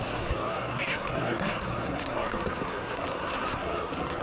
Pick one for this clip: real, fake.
fake